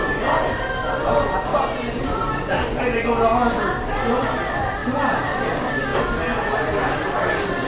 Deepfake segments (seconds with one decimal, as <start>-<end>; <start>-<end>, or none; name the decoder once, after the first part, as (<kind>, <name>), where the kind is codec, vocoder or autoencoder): 1.5-2.8 (vocoder, BigVGAN v2); 4.8-5.4